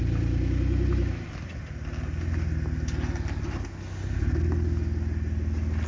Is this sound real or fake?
real